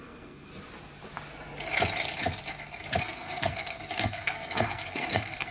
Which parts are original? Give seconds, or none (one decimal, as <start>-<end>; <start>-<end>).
0.5-3.0